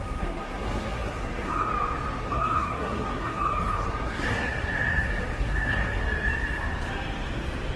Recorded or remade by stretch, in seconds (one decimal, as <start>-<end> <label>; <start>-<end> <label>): 0.0-1.7 remade; 1.7-2.2 recorded; 2.2-6.0 remade; 6.0-7.8 recorded